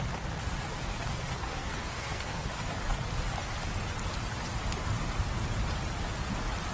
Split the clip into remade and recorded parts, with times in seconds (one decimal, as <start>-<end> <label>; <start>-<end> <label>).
0.0-0.9 recorded; 0.9-2.5 remade; 2.5-6.7 recorded